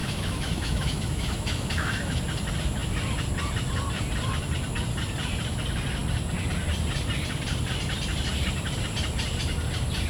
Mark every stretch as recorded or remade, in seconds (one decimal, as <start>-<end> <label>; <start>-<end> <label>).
0.0-2.2 remade; 2.2-10.1 recorded